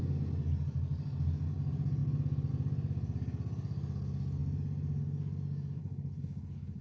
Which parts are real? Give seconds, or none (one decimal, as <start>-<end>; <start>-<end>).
0.0-5.8